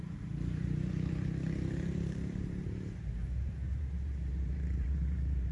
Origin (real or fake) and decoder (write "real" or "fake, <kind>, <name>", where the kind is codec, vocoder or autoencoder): fake, vocoder, BigVGAN v2